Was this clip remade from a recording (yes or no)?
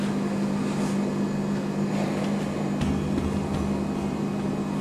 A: no